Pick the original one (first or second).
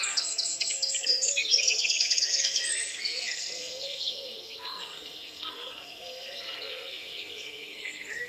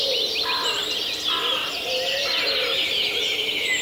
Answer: second